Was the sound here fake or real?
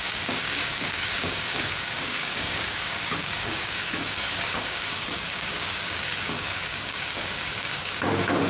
fake